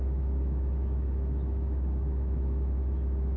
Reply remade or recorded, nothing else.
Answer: remade